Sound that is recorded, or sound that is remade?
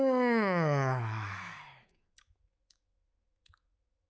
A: remade